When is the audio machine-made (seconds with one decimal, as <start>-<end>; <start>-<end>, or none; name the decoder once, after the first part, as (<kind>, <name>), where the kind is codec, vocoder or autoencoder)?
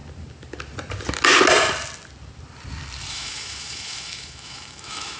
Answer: 3.1-5.2 (autoencoder, DAC-VAE)